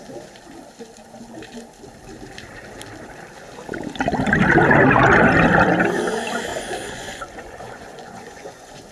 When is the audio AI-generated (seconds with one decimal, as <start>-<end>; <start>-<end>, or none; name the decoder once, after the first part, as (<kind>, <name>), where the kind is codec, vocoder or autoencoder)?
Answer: 6.5-8.9 (vocoder, Vocos)